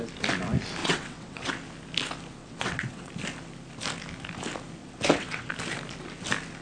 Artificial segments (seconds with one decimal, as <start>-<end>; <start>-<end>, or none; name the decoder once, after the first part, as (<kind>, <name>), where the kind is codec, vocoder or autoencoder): 0.8-1.5 (vocoder, WaveNeXt); 2.4-3.1; 4.8-5.5